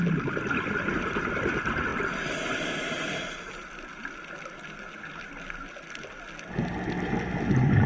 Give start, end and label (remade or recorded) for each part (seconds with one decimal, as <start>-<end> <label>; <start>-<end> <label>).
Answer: 0.0-7.9 recorded